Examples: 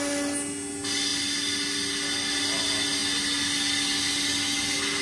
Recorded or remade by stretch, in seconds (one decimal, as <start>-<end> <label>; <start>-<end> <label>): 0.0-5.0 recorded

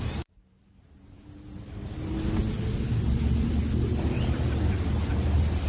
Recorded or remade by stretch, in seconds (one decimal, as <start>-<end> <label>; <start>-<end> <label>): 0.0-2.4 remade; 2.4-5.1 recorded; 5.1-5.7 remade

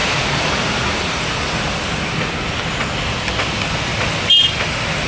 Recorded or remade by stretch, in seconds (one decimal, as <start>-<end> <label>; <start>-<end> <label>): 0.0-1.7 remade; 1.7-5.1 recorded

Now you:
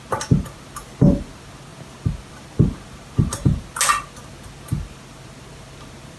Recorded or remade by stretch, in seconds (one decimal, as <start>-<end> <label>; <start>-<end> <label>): 0.0-6.2 recorded

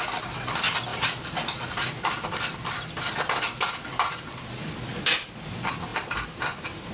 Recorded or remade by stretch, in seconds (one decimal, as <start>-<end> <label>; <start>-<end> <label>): 0.0-0.9 recorded; 0.9-2.3 remade; 2.3-3.9 recorded; 3.9-4.4 remade; 4.4-6.9 recorded

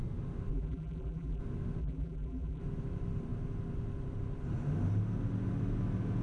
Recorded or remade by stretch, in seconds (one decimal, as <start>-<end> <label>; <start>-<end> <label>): 0.0-0.5 recorded; 0.5-1.4 remade; 1.4-1.8 recorded; 1.8-2.6 remade; 2.6-6.2 recorded

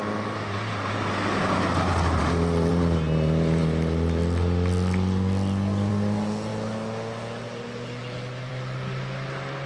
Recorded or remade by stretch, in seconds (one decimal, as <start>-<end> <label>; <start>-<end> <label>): 0.0-9.7 recorded